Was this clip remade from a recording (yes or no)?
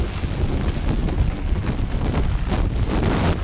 no